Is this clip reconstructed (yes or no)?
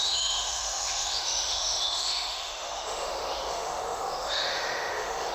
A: yes